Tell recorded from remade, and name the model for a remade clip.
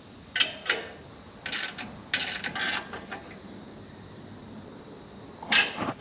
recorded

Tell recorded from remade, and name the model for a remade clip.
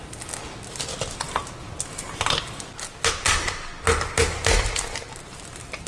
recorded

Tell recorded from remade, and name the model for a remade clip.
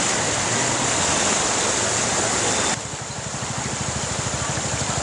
recorded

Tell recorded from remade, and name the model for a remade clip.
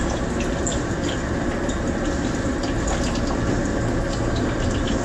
recorded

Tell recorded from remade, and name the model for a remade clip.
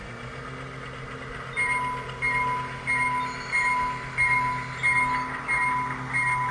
recorded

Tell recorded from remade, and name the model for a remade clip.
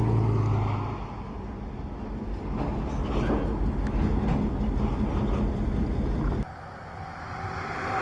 recorded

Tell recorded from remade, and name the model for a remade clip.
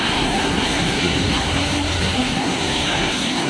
remade, codec, SNAC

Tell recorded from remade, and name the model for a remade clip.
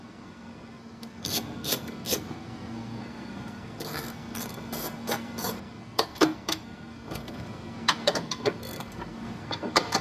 remade, codec, SNAC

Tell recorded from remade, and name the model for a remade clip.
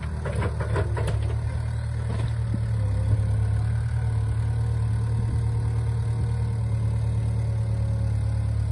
recorded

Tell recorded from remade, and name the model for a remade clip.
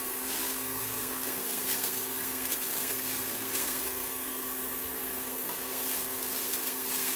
remade, codec, SNAC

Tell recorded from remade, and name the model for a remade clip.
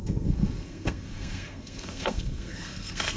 remade, codec, SNAC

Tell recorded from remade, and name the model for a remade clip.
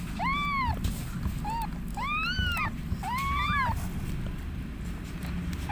recorded